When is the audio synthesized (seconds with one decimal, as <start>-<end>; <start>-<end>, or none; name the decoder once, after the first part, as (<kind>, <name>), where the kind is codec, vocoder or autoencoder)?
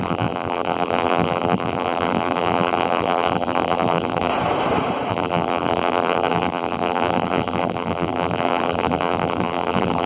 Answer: 0.0-4.3 (vocoder, BigVGAN v2); 5.1-10.1